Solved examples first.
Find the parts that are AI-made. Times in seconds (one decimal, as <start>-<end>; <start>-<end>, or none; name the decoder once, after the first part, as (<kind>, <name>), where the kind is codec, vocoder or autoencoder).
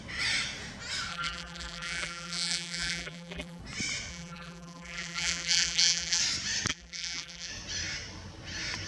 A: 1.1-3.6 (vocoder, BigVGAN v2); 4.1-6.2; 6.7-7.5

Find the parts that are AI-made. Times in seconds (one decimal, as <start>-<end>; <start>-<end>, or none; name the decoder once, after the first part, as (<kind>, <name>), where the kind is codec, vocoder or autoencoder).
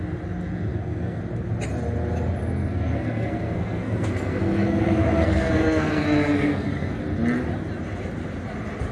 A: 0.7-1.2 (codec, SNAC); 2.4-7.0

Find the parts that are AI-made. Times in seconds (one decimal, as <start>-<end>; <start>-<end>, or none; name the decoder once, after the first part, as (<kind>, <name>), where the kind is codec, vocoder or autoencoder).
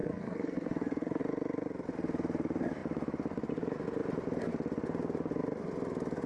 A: 0.0-1.2 (codec, SNAC)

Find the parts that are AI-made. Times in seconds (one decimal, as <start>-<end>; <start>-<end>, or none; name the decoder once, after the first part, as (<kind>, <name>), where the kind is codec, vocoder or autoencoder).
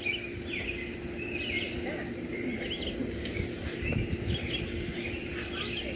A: none